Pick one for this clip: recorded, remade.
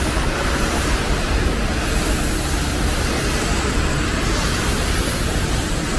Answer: recorded